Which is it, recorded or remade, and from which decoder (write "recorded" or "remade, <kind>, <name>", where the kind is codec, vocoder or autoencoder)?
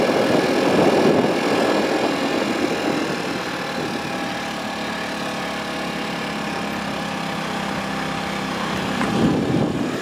recorded